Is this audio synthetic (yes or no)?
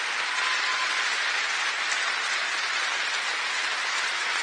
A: no